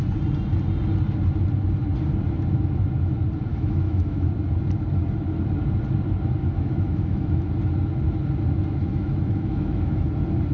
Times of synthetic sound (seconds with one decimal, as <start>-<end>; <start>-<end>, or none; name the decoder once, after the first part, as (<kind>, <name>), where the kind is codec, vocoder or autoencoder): 3.5-4.3 (autoencoder, DAC-VAE); 6.4-7.5; 8.8-10.1